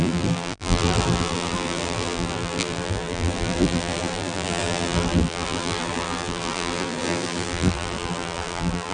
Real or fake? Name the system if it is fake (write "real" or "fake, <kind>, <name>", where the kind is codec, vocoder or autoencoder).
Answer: fake, vocoder, BigVGAN v2